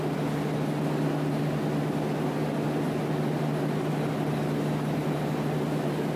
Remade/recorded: recorded